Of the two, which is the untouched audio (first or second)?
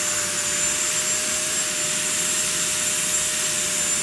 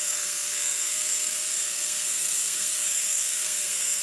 first